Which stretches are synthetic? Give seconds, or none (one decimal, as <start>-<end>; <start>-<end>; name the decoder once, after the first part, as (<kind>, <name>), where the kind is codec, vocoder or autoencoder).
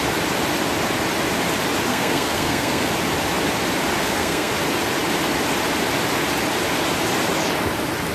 1.9-2.9 (codec, SNAC); 4.0-4.5